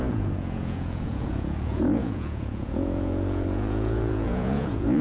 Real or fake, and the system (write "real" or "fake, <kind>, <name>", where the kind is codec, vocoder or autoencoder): fake, vocoder, Vocos